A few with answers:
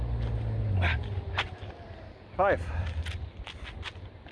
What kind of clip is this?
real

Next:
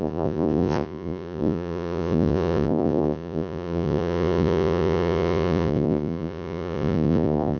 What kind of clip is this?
fake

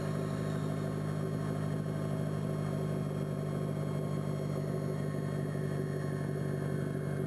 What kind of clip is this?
real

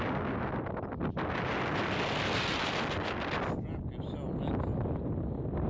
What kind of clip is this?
real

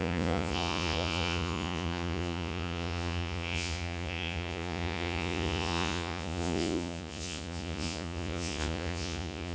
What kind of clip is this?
fake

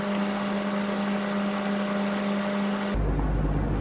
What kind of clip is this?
real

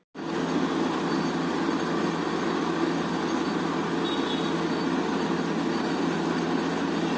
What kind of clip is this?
real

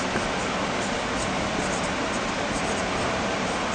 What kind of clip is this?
real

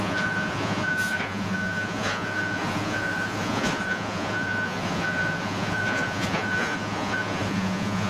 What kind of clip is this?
fake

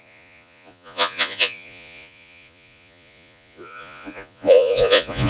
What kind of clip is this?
fake